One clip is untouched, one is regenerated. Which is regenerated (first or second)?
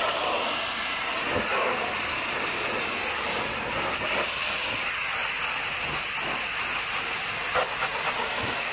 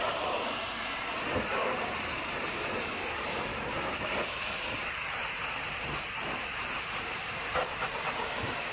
second